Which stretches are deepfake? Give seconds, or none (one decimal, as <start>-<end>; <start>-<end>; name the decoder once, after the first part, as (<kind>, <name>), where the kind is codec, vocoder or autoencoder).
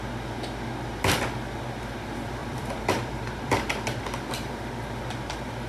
2.4-4.0 (vocoder, BigVGAN v2)